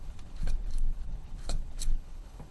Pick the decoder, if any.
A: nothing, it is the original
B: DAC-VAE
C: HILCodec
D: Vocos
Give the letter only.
C